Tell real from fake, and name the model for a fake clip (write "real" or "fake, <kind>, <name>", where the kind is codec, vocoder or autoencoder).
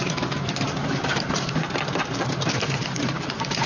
fake, vocoder, BigVGAN v2